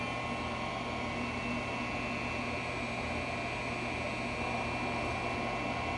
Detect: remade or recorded recorded